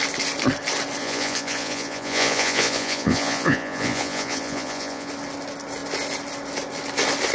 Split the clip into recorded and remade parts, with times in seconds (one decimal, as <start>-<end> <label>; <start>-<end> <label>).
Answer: 0.0-1.0 recorded; 1.0-5.1 remade; 5.1-7.3 recorded

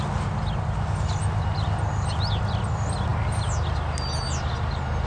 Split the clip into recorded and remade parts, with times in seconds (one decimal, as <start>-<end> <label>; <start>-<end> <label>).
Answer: 0.0-5.1 recorded

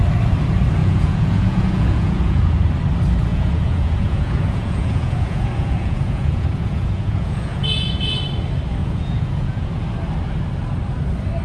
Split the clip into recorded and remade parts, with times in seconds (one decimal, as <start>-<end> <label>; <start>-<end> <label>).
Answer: 0.0-0.8 recorded; 0.8-2.5 remade; 2.5-3.3 recorded; 3.3-8.2 remade; 8.2-8.8 recorded; 8.8-9.7 remade; 9.7-11.4 recorded

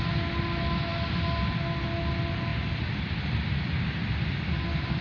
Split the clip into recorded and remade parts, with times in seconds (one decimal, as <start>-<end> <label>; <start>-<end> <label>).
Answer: 0.0-5.0 recorded